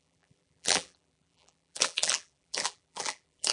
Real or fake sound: fake